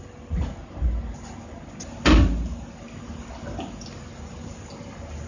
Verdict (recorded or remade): recorded